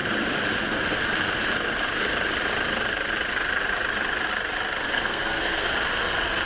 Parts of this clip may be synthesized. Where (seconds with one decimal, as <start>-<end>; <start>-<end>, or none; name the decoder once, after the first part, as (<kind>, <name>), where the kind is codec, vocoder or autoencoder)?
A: 4.9-5.7 (codec, SNAC)